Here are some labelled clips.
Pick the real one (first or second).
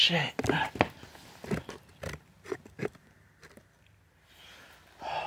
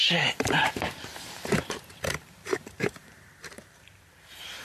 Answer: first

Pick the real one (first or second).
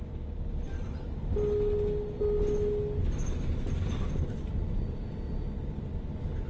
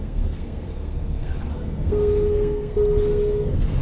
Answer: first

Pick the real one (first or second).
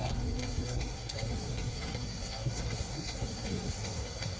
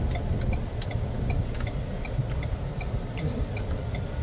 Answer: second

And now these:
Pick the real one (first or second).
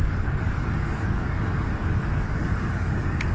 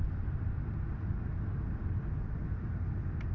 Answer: second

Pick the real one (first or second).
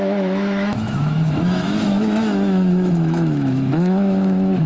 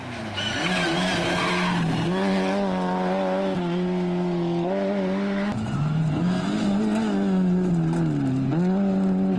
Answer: second